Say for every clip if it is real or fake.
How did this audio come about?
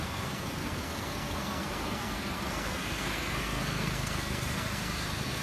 fake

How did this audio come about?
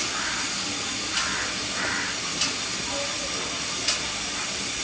real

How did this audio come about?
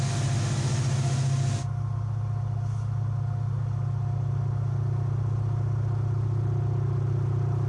real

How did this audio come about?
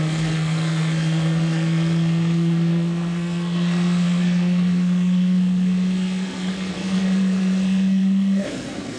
fake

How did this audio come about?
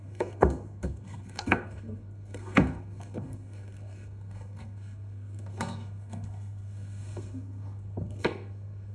fake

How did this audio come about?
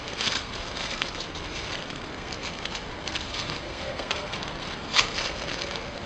fake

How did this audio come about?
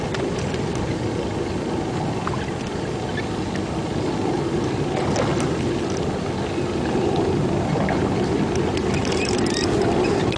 real